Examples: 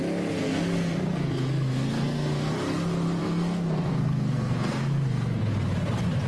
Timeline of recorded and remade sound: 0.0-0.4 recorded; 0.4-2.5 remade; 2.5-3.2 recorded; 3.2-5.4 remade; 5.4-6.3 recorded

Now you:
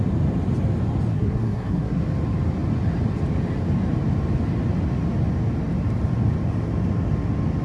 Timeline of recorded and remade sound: 0.0-1.1 recorded; 1.1-2.0 remade; 2.0-7.6 recorded